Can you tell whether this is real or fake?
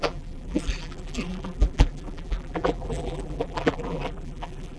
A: fake